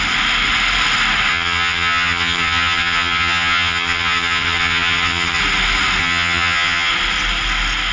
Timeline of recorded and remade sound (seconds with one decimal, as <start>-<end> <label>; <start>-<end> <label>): 0.0-1.3 recorded; 1.3-5.4 remade; 5.4-6.0 recorded; 6.0-6.9 remade; 6.9-7.9 recorded